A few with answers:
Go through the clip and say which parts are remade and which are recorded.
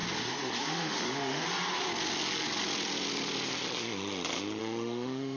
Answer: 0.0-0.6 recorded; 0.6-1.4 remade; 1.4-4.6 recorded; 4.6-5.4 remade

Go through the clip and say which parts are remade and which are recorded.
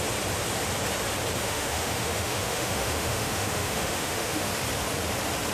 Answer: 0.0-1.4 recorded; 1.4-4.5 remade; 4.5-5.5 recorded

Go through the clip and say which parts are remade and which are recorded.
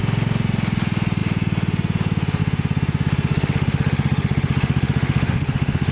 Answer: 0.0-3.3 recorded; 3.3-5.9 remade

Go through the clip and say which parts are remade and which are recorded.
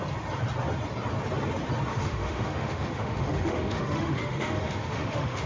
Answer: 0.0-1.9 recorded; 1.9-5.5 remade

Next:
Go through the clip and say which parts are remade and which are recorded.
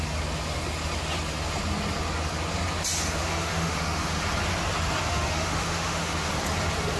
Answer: 0.0-3.2 recorded; 3.2-4.2 remade; 4.2-5.1 recorded; 5.1-6.3 remade; 6.3-7.0 recorded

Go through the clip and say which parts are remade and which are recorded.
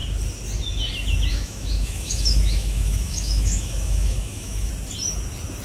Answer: 0.0-1.3 recorded; 1.3-4.7 remade; 4.7-5.6 recorded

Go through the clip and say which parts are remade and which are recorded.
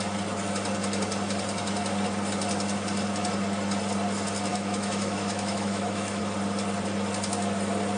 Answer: 0.0-4.5 recorded; 4.5-6.2 remade; 6.2-8.0 recorded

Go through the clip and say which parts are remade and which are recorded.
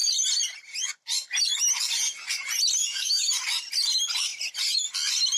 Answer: 0.0-2.8 recorded; 2.8-3.3 remade; 3.3-5.4 recorded